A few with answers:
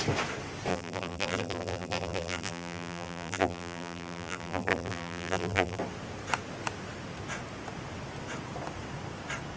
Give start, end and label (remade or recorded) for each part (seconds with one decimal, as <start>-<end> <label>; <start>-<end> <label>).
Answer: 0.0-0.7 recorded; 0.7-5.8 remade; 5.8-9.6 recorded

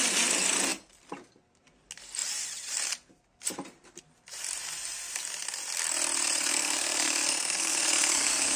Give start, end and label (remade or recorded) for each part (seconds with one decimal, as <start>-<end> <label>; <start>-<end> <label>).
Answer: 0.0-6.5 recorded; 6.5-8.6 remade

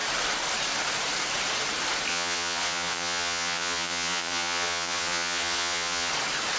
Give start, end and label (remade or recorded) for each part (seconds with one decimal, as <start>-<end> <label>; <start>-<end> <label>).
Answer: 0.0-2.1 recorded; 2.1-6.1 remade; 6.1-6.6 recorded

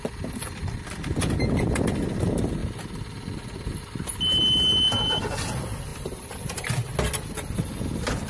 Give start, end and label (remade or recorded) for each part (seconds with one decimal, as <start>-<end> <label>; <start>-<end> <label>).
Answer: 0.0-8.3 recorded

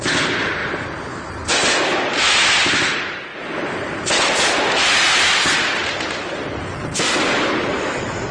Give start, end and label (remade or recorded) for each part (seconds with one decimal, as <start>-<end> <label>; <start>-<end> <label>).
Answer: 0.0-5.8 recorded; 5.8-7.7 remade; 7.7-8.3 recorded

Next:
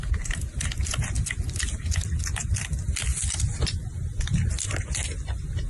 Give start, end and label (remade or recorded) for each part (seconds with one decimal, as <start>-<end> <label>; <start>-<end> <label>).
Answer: 0.0-5.7 recorded